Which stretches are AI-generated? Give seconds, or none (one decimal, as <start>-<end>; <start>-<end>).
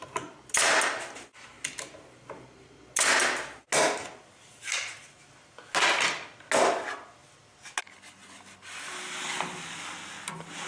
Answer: none